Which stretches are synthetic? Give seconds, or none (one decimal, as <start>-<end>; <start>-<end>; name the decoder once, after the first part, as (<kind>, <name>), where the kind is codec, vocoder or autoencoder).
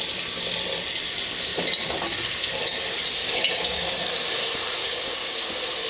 3.2-4.0 (codec, DAC); 4.8-5.5